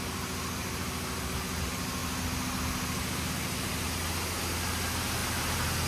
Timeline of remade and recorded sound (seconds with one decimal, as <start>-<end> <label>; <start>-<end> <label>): 0.0-5.9 recorded

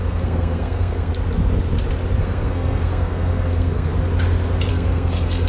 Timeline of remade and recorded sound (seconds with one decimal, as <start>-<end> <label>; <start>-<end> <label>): 0.0-1.1 remade; 1.1-2.2 recorded; 2.2-3.9 remade; 3.9-4.7 recorded; 4.7-5.5 remade

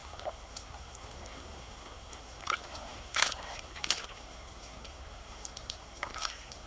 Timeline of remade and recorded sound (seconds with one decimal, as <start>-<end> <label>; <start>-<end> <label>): 0.0-6.7 remade